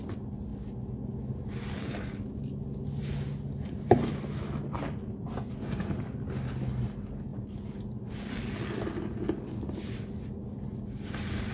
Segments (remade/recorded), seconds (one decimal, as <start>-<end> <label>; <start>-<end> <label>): 0.0-11.5 recorded